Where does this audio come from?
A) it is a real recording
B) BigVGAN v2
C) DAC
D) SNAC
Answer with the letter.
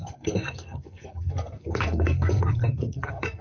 D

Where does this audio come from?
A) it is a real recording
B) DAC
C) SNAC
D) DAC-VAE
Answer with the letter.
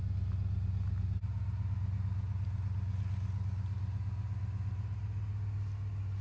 A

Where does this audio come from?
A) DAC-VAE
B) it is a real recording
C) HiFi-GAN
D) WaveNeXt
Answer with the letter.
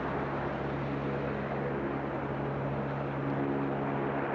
B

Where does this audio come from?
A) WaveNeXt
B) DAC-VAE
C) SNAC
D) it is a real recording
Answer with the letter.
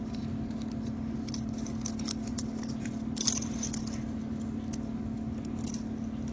D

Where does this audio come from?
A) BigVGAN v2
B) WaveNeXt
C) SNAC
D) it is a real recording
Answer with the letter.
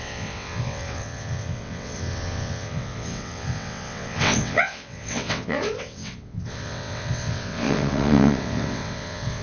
B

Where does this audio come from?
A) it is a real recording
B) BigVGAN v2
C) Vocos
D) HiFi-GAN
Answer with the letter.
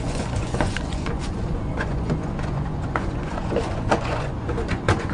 C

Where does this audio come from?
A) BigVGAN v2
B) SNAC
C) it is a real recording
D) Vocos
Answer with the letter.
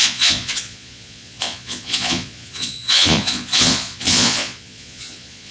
D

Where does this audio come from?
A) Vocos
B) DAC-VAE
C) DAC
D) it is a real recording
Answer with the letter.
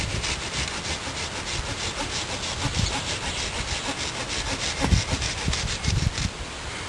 D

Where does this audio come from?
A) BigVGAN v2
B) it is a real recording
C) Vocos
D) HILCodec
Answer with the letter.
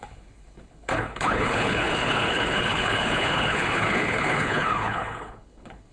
D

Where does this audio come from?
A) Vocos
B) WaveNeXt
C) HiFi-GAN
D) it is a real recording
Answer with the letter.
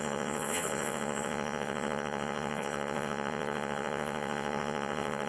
B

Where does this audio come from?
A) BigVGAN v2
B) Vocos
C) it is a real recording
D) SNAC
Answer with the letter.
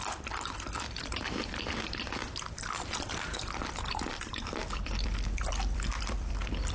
A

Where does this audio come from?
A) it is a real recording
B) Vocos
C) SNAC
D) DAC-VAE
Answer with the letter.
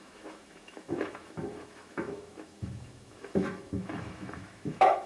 D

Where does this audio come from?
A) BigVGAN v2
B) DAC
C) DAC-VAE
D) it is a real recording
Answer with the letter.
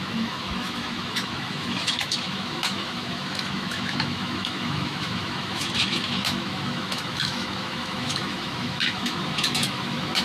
C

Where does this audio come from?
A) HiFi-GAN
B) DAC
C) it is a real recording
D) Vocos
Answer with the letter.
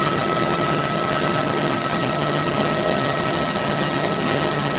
A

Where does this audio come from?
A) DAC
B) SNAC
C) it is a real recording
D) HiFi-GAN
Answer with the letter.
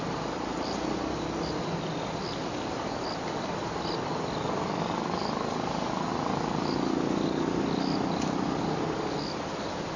C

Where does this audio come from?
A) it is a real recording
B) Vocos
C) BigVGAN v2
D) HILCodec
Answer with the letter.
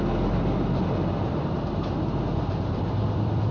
A